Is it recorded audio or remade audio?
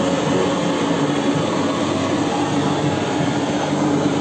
recorded